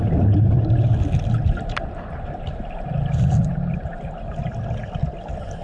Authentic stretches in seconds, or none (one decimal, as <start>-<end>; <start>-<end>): 0.0-5.6

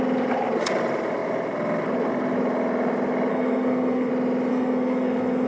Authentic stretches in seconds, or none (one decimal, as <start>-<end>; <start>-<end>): 0.0-3.3; 4.1-4.5